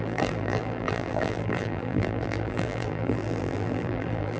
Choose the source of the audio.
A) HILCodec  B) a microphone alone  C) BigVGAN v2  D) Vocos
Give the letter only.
C